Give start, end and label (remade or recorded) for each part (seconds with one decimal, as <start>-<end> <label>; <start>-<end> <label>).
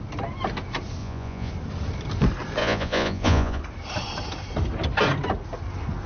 0.0-1.0 recorded; 1.0-1.5 remade; 1.5-2.6 recorded; 2.6-3.6 remade; 3.6-6.1 recorded